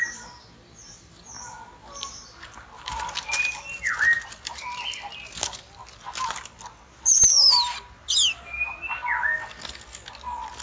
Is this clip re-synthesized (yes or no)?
no